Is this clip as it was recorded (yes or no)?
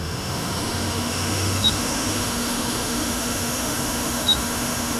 no